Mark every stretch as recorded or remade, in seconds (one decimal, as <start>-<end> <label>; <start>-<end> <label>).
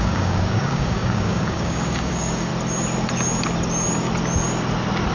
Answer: 0.0-2.5 remade; 2.5-5.1 recorded